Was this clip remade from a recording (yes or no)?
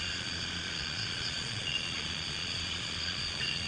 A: yes